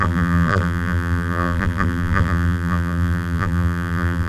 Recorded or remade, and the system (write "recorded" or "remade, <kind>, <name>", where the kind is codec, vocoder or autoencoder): remade, vocoder, BigVGAN v2